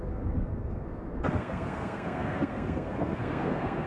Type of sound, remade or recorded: remade